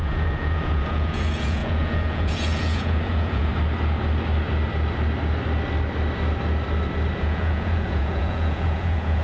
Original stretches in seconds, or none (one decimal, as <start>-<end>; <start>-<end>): 3.5-7.2